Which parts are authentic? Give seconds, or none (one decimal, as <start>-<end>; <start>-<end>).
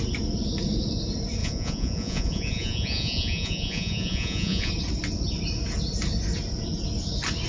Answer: 0.0-1.4; 4.7-7.5